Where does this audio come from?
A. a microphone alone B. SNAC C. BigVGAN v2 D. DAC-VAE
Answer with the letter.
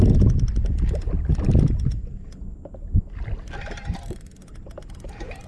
A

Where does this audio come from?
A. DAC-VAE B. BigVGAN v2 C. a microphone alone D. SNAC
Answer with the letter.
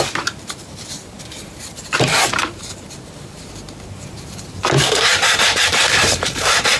B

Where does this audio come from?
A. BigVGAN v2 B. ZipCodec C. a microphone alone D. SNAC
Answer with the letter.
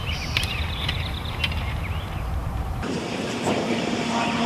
A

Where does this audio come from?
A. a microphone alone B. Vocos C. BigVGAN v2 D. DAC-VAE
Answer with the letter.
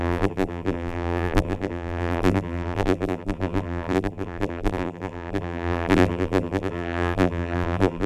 C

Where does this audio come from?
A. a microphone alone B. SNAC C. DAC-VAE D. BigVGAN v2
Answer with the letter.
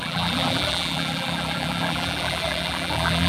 D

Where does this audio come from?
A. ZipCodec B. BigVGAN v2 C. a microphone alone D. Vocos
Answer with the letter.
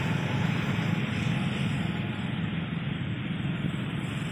C